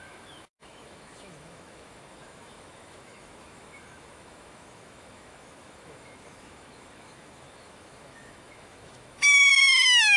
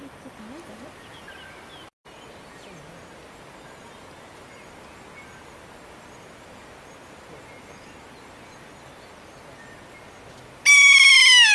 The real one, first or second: second